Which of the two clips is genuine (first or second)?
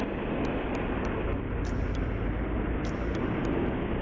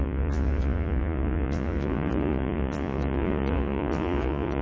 first